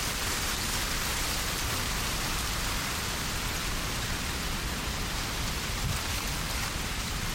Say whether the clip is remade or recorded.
remade